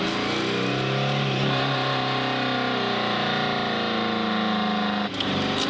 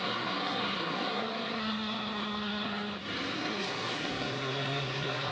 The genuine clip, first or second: first